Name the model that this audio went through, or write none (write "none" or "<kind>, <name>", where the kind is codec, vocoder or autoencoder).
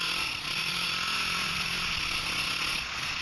vocoder, Vocos